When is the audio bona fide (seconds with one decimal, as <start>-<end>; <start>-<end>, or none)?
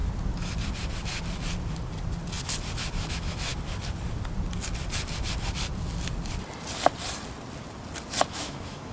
0.0-3.1; 3.5-8.3